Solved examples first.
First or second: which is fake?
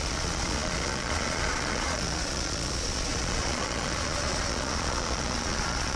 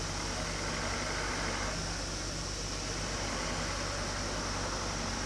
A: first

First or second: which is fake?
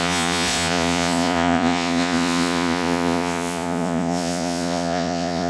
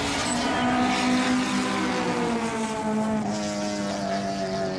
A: first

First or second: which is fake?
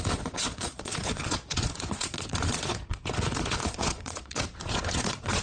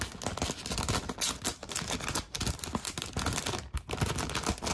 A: first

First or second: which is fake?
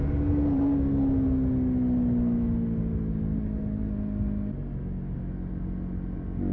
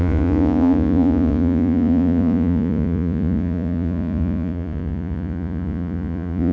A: second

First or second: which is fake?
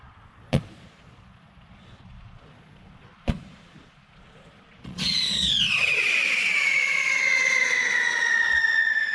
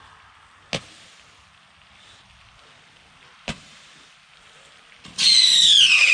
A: first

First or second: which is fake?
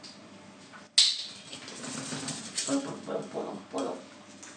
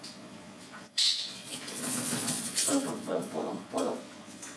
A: second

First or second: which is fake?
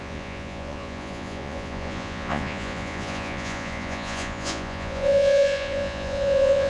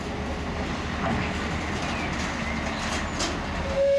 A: first